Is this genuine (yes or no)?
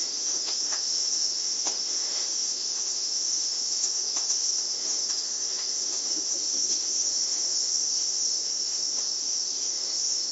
no